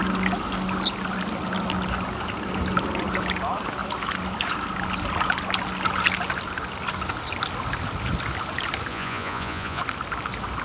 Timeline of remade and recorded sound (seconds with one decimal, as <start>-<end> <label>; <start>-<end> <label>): 0.0-8.9 recorded; 8.9-9.8 remade; 9.8-10.6 recorded